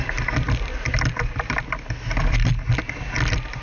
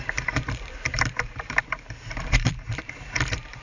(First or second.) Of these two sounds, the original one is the first